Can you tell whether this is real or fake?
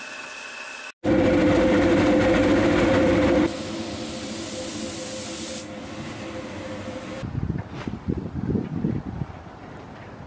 real